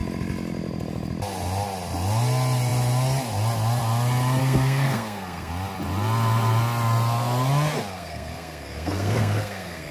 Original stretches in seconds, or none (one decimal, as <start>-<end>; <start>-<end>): 0.0-4.4; 5.5-7.9